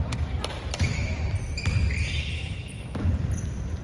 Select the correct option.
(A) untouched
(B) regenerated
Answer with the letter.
B